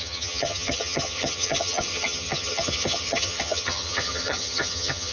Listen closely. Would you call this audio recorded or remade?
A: remade